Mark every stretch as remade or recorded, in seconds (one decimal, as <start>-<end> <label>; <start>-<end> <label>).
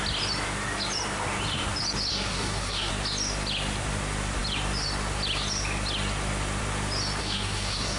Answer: 0.0-2.1 recorded; 2.1-2.9 remade; 2.9-7.2 recorded; 7.2-8.0 remade